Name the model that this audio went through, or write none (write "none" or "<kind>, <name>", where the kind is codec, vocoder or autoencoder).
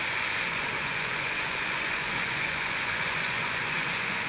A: vocoder, Vocos